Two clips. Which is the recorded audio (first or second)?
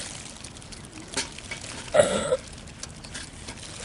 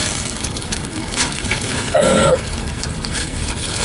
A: first